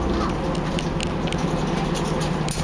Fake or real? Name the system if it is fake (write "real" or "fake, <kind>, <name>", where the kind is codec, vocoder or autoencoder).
real